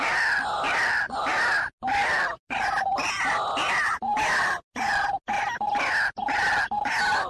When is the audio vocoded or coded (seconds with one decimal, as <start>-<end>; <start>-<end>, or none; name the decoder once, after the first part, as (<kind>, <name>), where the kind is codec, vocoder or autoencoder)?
none